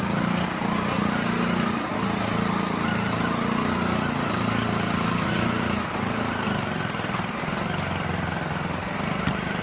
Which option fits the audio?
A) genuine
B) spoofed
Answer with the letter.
A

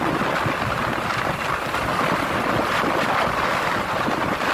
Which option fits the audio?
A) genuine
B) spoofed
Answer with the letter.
A